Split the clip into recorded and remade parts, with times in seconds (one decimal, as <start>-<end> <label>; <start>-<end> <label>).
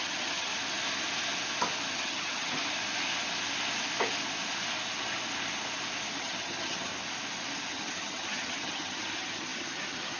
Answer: 0.0-0.5 remade; 0.5-1.9 recorded; 1.9-2.6 remade; 2.6-6.2 recorded; 6.2-6.9 remade; 6.9-7.7 recorded; 7.7-10.2 remade